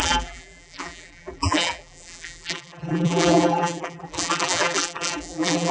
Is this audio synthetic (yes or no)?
yes